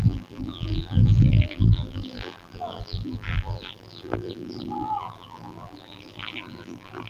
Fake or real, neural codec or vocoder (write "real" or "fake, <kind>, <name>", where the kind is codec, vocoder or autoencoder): fake, vocoder, BigVGAN v2